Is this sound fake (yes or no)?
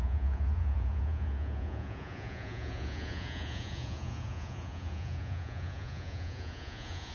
yes